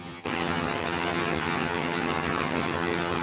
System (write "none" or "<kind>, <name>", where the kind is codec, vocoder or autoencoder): vocoder, HiFi-GAN